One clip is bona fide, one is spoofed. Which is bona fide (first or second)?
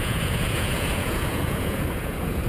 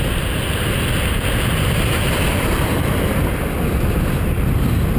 second